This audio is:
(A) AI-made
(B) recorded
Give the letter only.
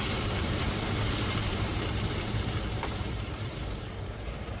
A